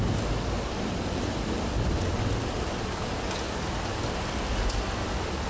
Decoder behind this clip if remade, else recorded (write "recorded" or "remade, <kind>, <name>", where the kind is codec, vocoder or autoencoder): recorded